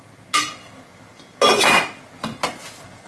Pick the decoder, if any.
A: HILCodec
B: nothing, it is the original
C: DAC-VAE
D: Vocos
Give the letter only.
B